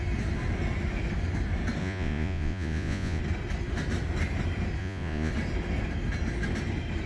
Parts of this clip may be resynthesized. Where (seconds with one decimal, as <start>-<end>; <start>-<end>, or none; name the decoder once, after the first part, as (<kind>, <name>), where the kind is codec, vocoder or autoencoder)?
1.8-3.2 (vocoder, Vocos); 4.8-5.3